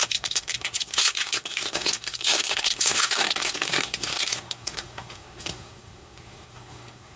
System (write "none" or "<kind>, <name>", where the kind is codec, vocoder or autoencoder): codec, SNAC